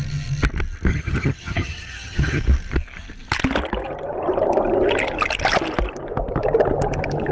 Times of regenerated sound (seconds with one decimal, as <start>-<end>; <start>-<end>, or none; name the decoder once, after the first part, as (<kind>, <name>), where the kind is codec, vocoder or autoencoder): 0.9-2.4 (vocoder, HiFi-GAN)